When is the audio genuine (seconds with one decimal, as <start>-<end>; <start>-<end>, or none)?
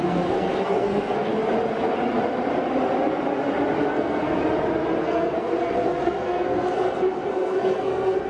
1.3-3.9; 4.4-5.0